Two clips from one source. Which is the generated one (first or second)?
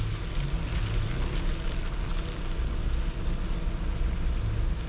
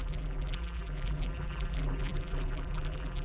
second